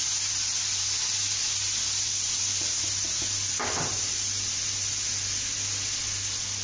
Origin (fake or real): real